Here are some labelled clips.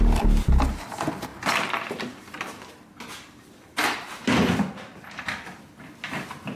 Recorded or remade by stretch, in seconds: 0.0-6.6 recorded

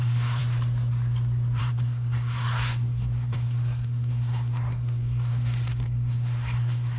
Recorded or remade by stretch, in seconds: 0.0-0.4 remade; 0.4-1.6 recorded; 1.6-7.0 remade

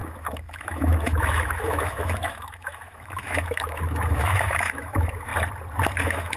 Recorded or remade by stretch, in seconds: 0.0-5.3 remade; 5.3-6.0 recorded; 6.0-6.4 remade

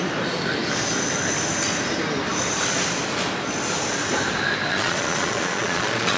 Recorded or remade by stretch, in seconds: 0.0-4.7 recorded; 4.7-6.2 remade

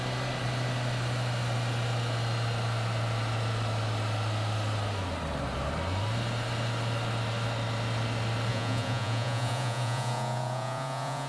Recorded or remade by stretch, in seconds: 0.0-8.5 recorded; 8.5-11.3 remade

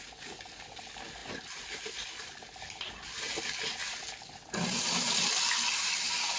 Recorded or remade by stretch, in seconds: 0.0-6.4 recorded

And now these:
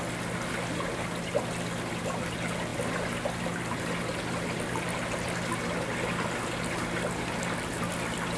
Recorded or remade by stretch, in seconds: 0.0-8.4 recorded